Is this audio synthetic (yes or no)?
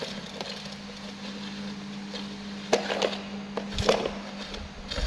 no